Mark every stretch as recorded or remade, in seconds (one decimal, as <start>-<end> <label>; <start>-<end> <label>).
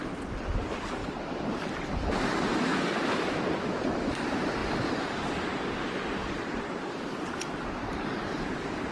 0.0-2.7 remade; 2.7-3.7 recorded; 3.7-8.9 remade